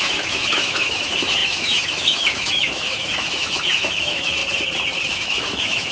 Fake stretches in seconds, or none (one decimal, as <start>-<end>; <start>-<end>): 0.0-4.4; 5.1-5.9